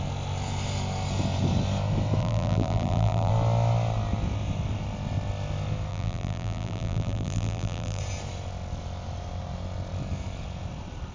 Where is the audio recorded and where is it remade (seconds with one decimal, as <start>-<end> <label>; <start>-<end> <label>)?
0.0-2.2 recorded; 2.2-3.3 remade; 3.3-5.9 recorded; 5.9-8.0 remade; 8.0-11.1 recorded

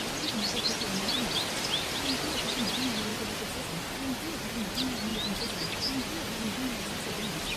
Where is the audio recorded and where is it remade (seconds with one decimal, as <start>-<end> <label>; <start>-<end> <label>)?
0.0-7.6 recorded

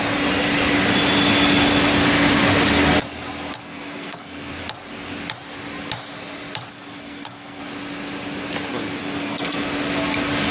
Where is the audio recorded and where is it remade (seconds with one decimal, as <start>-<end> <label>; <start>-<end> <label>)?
0.0-3.6 recorded; 3.6-4.5 remade; 4.5-6.7 recorded; 6.7-7.6 remade; 7.6-9.0 recorded; 9.0-9.7 remade; 9.7-10.5 recorded